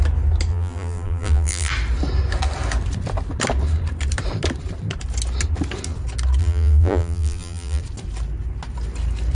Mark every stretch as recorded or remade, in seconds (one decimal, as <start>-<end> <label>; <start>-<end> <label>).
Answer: 0.0-0.5 recorded; 0.5-1.7 remade; 1.7-6.4 recorded; 6.4-7.8 remade; 7.8-9.3 recorded